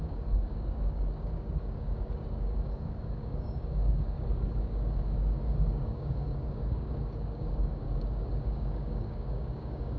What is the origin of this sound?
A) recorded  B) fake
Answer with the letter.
B